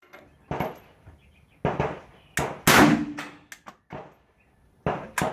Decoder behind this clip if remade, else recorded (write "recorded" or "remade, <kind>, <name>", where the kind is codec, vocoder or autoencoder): recorded